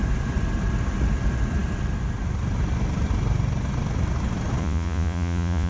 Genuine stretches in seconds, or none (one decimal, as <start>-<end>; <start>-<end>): 0.0-4.6